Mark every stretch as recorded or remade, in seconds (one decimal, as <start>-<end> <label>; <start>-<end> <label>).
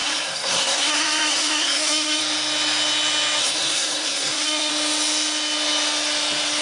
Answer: 0.0-2.2 remade; 2.2-3.4 recorded; 3.4-4.7 remade; 4.7-6.6 recorded